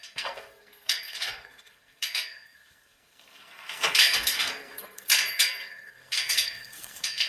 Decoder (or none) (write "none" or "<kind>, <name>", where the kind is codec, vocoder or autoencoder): codec, SNAC